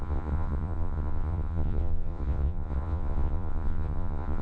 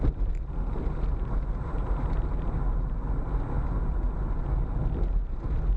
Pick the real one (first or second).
second